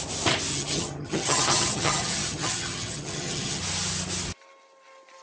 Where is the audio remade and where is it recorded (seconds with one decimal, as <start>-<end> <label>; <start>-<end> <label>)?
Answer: 0.0-0.5 recorded; 0.5-3.6 remade; 3.6-5.2 recorded